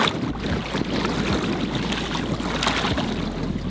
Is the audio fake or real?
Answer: real